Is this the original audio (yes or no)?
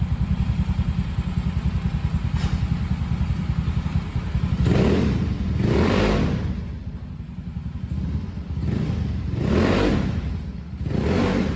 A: yes